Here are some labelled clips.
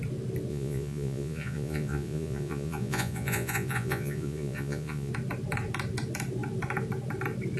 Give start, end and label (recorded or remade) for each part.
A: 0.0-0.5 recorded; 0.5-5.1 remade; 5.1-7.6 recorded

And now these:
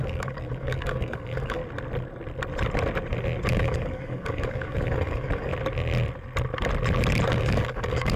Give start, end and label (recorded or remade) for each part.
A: 0.0-1.6 remade; 1.6-3.5 recorded; 3.5-5.5 remade; 5.5-7.3 recorded; 7.3-8.2 remade

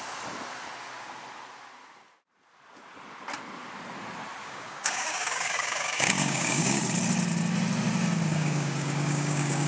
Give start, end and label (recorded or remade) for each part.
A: 0.0-4.4 recorded; 4.4-6.8 remade; 6.8-8.3 recorded; 8.3-9.7 remade